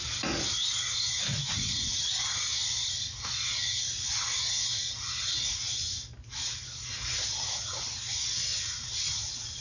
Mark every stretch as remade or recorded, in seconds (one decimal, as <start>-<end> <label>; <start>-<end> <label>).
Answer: 0.0-1.3 recorded; 1.3-2.1 remade; 2.1-8.5 recorded; 8.5-9.6 remade